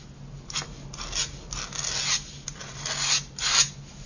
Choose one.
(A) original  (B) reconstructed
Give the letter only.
A